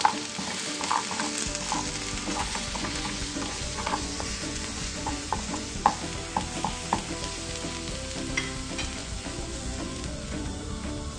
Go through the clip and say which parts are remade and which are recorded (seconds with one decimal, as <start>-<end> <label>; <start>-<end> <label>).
0.0-2.3 recorded; 2.3-5.9 remade; 5.9-9.0 recorded; 9.0-10.7 remade; 10.7-11.2 recorded